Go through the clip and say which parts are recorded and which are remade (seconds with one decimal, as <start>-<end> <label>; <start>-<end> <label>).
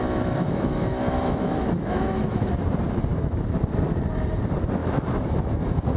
0.0-2.5 remade; 2.5-3.1 recorded; 3.1-3.6 remade; 3.6-4.8 recorded; 4.8-5.6 remade; 5.6-6.0 recorded